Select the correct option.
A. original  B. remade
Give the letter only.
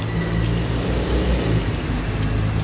A